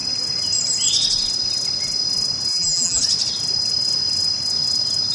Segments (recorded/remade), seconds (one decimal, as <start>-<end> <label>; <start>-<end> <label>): 0.0-2.5 recorded; 2.5-3.0 remade; 3.0-5.1 recorded